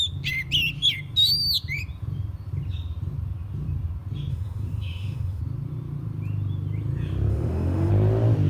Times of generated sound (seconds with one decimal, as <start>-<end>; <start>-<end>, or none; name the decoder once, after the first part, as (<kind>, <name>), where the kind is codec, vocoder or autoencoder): 4.3-5.4 (autoencoder, DAC-VAE); 7.3-7.9